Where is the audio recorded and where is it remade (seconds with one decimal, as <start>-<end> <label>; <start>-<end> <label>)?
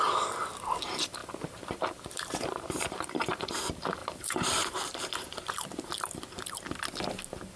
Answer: 0.0-1.2 recorded; 1.2-3.5 remade; 3.5-4.0 recorded; 4.0-5.9 remade; 5.9-7.6 recorded